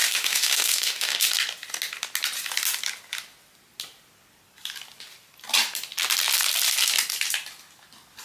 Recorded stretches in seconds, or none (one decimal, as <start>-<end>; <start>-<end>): 1.3-8.2